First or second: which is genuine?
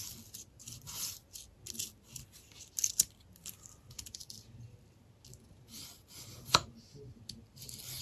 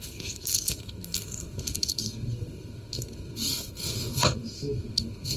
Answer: first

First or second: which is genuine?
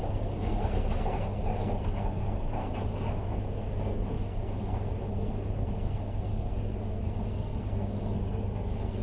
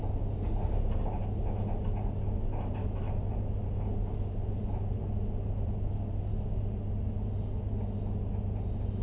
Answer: second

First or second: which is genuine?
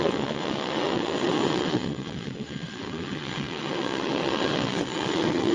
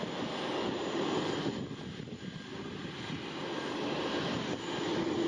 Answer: second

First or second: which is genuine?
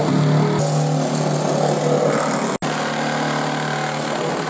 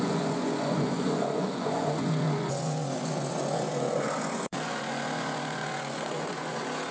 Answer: first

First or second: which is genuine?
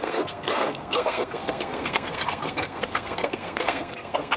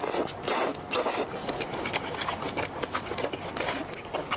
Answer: second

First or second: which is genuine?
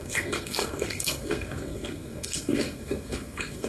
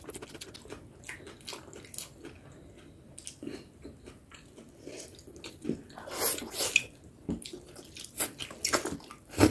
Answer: second